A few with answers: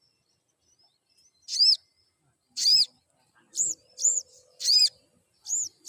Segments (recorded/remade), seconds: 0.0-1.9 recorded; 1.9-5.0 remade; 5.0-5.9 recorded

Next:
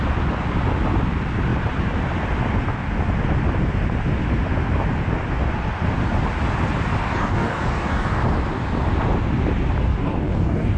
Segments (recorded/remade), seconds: 0.0-7.0 recorded; 7.0-8.2 remade; 8.2-9.9 recorded; 9.9-10.8 remade

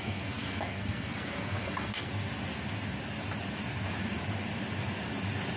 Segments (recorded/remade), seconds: 0.0-2.1 remade; 2.1-5.6 recorded

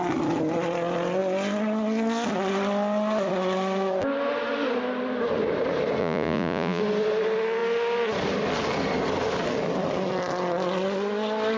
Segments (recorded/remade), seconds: 0.0-6.0 recorded; 6.0-6.8 remade; 6.8-11.6 recorded

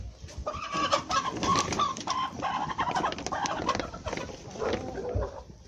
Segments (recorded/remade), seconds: 0.0-1.5 recorded; 1.5-2.7 remade; 2.7-5.7 recorded

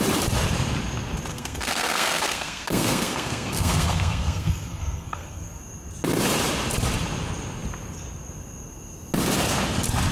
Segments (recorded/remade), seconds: 0.0-1.3 recorded; 1.3-5.6 remade; 5.6-10.1 recorded